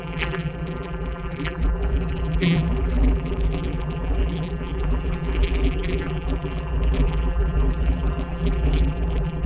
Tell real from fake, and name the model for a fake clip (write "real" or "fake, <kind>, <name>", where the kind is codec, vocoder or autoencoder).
fake, vocoder, BigVGAN v2